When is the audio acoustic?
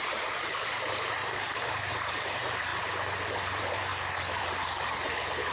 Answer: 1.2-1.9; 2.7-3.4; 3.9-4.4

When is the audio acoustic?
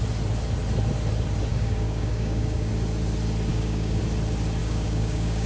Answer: 0.0-1.5; 2.7-3.5; 4.0-4.6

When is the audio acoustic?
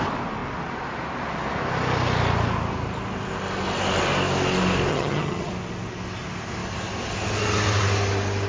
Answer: 0.0-4.9; 5.5-8.5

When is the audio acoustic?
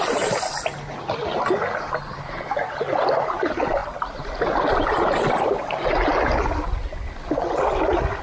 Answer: 0.0-8.2